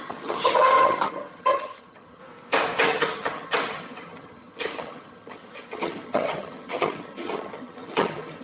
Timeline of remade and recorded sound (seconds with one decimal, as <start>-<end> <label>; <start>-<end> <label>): 0.0-2.2 remade; 2.2-2.8 recorded; 2.8-8.4 remade